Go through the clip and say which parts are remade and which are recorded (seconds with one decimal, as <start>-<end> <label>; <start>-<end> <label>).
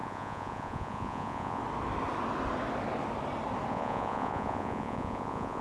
0.0-1.6 remade; 1.6-3.7 recorded; 3.7-5.6 remade